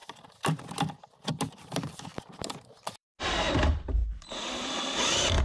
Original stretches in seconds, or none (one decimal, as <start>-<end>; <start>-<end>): 0.0-5.4